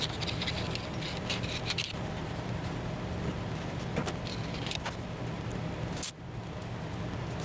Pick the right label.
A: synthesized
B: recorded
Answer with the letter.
B